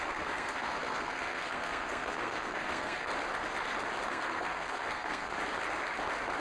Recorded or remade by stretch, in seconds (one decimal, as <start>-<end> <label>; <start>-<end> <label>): 0.0-3.1 remade; 3.1-4.1 recorded; 4.1-5.3 remade; 5.3-6.4 recorded